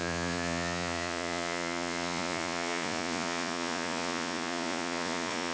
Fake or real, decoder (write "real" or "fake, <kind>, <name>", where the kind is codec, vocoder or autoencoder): fake, vocoder, Vocos